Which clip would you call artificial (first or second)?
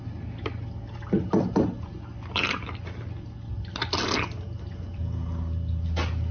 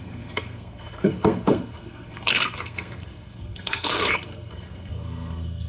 second